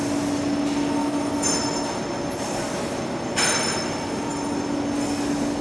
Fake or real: real